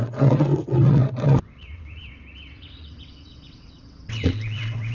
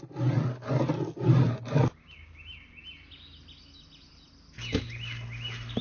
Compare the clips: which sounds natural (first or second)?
second